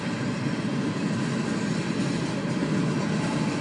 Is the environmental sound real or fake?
real